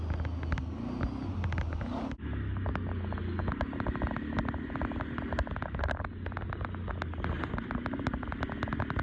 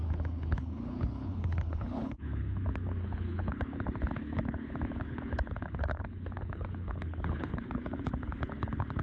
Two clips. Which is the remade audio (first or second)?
second